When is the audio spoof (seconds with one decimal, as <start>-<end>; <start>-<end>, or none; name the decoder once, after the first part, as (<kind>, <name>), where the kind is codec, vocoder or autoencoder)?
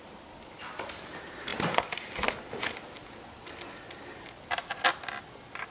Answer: none